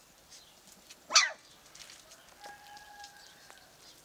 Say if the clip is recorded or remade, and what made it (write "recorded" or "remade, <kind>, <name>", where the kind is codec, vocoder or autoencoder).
recorded